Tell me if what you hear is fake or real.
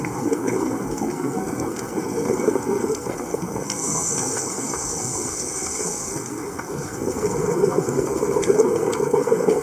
fake